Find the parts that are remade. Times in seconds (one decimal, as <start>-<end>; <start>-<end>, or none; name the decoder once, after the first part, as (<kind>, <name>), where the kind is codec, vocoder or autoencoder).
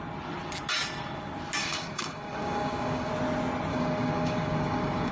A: 1.6-3.1 (codec, DAC); 3.7-5.1